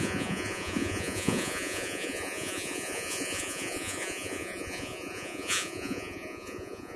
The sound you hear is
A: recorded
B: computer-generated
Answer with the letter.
B